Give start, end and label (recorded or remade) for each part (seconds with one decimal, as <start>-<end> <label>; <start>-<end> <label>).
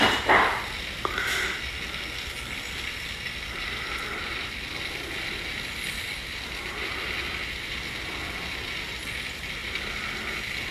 0.0-10.7 recorded